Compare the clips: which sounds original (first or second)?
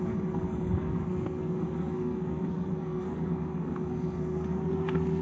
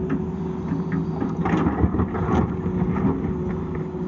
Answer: second